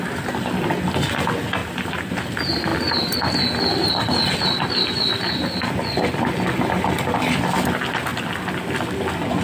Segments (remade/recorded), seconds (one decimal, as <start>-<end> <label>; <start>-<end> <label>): 0.0-1.6 recorded; 1.6-2.1 remade; 2.1-9.4 recorded